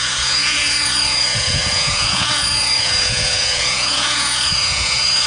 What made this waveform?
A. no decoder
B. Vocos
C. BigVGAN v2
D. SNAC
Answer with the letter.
B